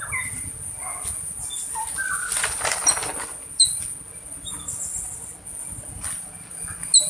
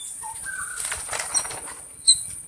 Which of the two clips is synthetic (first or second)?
second